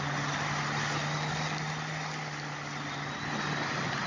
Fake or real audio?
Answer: real